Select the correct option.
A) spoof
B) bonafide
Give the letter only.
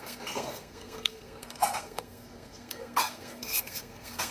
A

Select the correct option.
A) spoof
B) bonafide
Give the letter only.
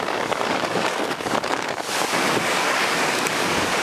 A